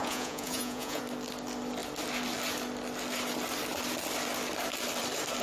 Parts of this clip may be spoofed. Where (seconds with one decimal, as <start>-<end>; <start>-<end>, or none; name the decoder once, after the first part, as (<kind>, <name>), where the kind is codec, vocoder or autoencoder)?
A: 0.0-1.0 (vocoder, Vocos)